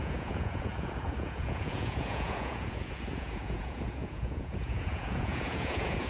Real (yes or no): no